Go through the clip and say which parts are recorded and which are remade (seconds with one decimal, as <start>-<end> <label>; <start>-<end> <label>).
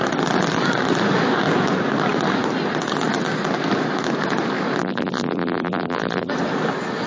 0.0-4.8 recorded; 4.8-6.3 remade; 6.3-7.1 recorded